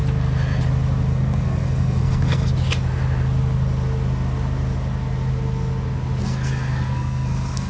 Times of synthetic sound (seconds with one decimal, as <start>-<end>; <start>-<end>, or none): 1.1-2.5; 6.2-7.7